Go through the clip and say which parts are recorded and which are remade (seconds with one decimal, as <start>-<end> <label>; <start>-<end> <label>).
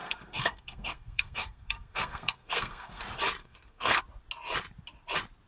0.0-3.0 remade; 3.0-3.4 recorded; 3.4-4.0 remade; 4.0-5.5 recorded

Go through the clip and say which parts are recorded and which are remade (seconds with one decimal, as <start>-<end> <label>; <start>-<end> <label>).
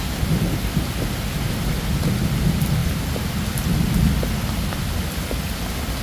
0.0-6.0 recorded